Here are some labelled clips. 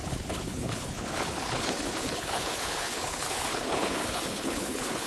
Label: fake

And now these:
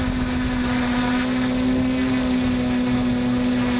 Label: real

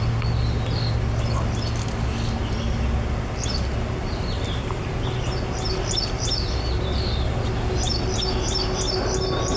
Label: real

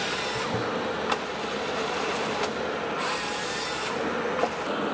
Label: real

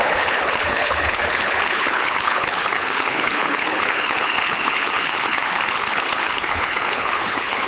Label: fake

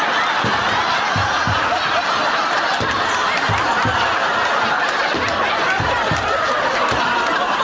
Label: real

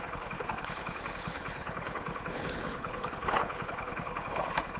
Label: fake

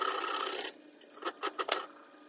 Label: real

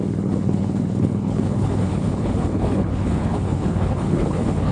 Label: fake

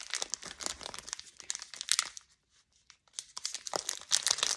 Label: real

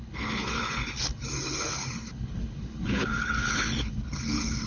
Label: fake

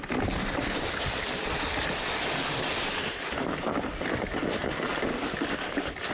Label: real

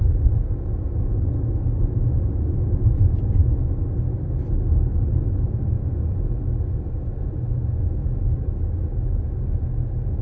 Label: real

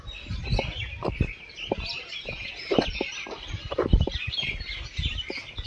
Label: real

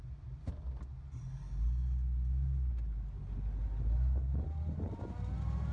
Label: real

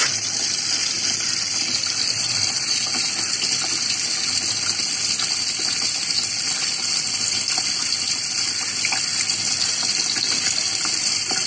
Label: real